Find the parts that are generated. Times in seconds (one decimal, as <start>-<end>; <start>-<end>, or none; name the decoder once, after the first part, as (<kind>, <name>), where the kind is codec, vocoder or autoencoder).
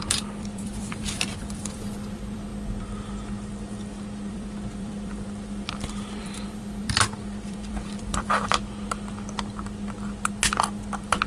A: 0.0-2.5 (vocoder, BigVGAN v2); 4.3-8.3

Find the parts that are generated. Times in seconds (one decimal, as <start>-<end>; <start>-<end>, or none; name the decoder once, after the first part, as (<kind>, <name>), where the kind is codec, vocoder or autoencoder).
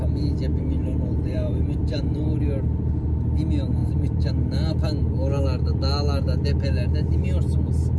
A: 0.5-2.4 (vocoder, BigVGAN v2); 3.8-4.3